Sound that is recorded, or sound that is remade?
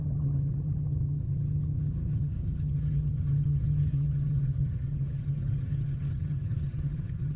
remade